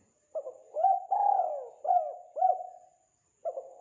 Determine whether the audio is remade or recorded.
recorded